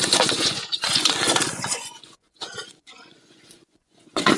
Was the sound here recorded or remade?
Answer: remade